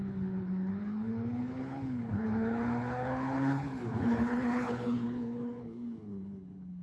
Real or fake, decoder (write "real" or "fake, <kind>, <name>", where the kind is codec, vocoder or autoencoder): fake, codec, HILCodec